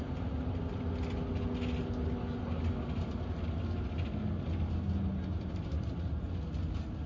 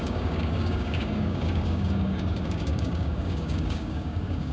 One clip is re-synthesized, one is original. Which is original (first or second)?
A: first